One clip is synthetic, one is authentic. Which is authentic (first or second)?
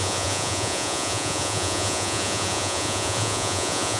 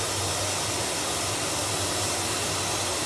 second